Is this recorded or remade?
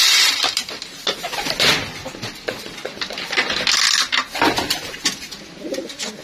recorded